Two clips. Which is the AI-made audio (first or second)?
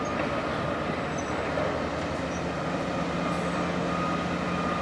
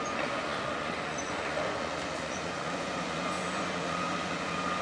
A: second